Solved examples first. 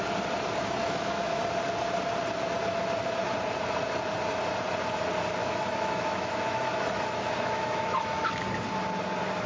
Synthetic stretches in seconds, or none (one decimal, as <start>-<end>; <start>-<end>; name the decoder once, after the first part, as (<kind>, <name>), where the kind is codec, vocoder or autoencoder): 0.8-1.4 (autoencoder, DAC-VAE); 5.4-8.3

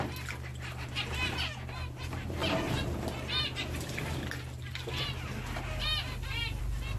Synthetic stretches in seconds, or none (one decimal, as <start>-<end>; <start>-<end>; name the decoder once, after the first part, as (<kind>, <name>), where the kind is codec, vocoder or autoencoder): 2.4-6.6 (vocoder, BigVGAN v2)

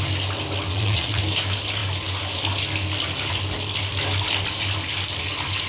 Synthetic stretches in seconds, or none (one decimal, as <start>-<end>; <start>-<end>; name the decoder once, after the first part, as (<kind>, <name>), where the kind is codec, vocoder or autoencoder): 0.7-1.2 (vocoder, WaveNeXt)

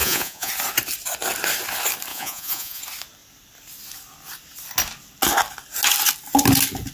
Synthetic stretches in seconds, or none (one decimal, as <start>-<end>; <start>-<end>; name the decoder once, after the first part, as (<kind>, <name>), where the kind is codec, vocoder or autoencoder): 0.0-0.5 (vocoder, Vocos); 2.1-2.8

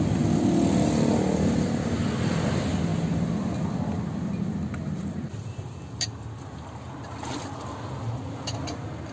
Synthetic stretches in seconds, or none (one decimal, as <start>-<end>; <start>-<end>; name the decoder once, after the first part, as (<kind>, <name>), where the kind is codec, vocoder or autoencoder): none